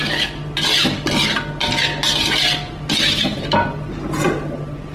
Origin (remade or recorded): recorded